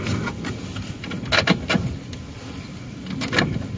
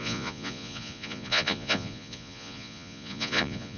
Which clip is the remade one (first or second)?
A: second